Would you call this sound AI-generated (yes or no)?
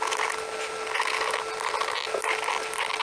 no